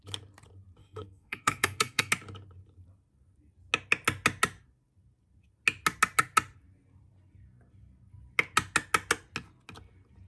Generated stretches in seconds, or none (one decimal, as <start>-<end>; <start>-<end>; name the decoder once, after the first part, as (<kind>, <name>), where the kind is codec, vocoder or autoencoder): 0.8-2.1 (codec, SNAC)